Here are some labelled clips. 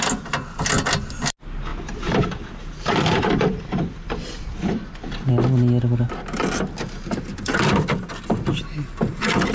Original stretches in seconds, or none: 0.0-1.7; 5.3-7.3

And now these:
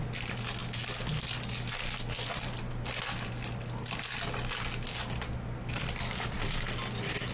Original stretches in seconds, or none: 0.0-7.3

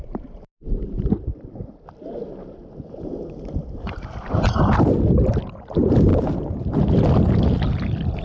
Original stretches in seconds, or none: 0.0-6.1; 6.7-8.2

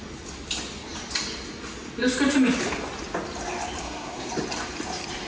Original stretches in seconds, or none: 0.0-3.8; 4.3-5.3

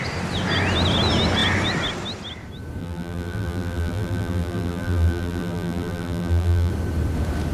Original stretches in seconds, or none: 0.0-2.8; 6.7-7.5

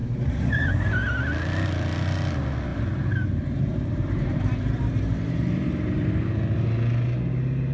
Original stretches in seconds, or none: 0.7-2.7; 6.3-7.7

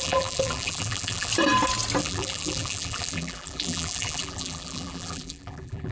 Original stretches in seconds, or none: 1.3-2.0